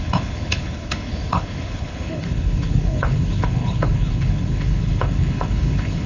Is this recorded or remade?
remade